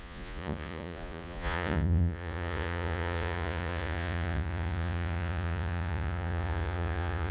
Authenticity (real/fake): fake